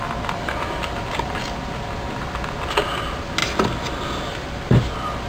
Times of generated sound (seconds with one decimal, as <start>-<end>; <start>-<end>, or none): none